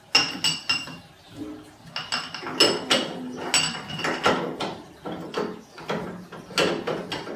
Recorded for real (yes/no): yes